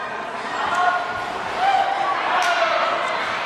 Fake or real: real